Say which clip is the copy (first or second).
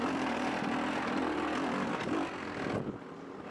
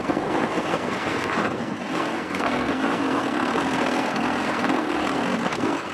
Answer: second